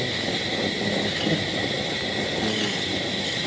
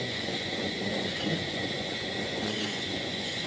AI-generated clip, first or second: second